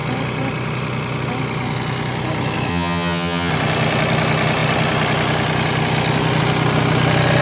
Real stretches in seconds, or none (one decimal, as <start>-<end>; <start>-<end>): 0.0-2.7; 3.5-7.4